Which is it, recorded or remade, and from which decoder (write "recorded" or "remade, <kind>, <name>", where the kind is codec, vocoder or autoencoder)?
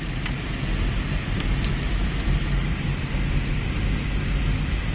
recorded